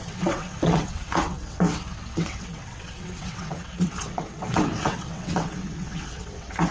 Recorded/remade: remade